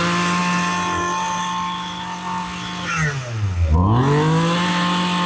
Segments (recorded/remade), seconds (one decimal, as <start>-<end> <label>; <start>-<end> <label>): 0.0-5.3 recorded